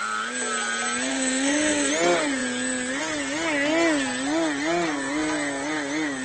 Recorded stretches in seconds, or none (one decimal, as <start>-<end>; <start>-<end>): 0.0-1.1; 1.9-6.2